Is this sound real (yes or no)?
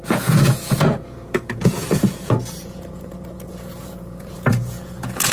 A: no